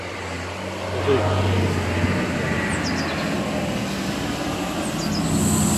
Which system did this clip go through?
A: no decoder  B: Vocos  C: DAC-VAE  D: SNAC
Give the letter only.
A